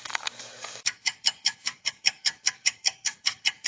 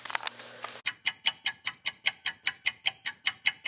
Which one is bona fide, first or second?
second